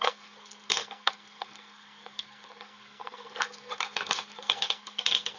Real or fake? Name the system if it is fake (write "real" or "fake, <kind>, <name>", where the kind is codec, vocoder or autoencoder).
fake, codec, SNAC